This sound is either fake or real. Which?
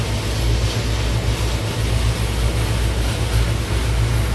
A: real